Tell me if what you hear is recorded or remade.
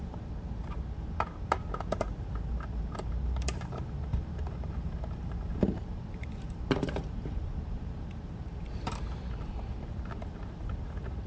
remade